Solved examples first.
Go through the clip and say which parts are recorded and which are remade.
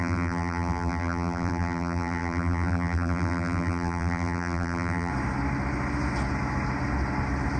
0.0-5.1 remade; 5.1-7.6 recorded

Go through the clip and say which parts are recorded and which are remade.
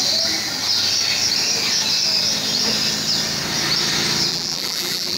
0.0-4.3 recorded; 4.3-5.2 remade